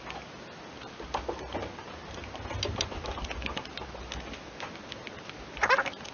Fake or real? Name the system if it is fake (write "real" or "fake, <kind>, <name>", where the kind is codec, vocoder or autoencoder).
real